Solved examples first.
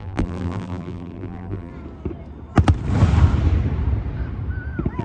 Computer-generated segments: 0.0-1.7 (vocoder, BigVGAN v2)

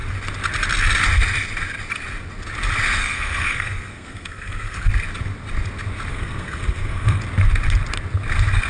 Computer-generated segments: 3.0-4.9 (codec, SNAC); 6.1-7.2

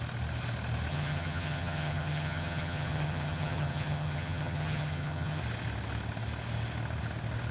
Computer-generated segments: 0.9-5.4 (vocoder, HiFi-GAN)

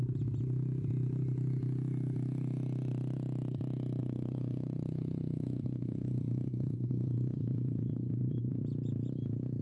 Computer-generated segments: 4.0-8.6 (vocoder, Vocos)

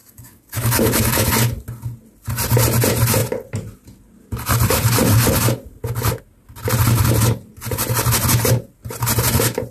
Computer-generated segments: 0.0-1.3 (codec, DAC)

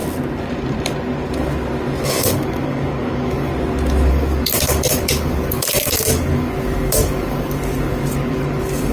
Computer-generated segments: 2.0-3.5 (codec, DAC); 4.1-8.9